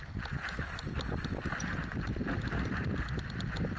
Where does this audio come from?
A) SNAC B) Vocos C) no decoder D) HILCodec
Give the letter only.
C